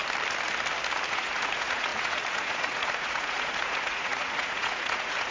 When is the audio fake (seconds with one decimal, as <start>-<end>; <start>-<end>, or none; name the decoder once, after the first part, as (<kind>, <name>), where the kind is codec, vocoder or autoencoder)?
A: 1.1-5.3 (vocoder, Vocos)